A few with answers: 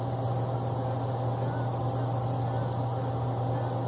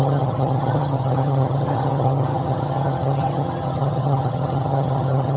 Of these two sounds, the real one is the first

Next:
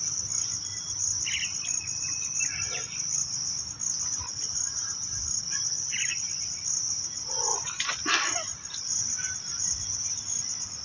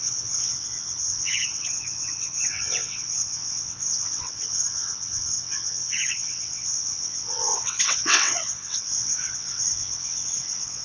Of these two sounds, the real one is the first